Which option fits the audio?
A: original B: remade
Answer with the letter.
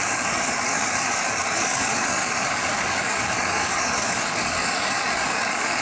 B